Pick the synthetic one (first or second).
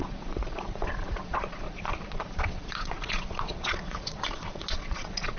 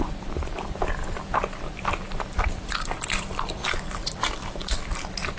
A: first